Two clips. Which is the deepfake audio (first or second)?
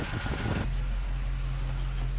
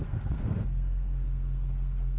second